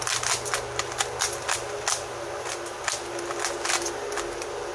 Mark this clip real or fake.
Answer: real